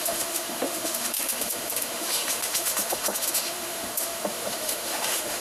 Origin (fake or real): fake